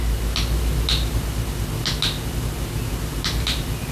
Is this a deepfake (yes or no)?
no